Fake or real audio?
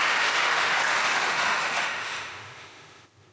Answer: fake